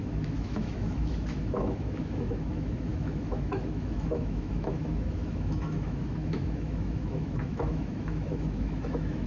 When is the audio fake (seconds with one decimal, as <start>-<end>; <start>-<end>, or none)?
0.0-9.3